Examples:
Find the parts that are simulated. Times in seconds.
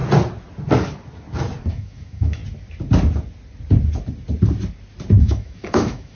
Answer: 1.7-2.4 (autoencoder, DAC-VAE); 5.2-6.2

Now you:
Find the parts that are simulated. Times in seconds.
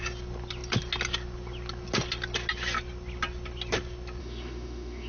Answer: 4.2-5.1 (autoencoder, DAC-VAE)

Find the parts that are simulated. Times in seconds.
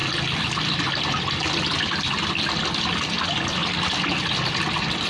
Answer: none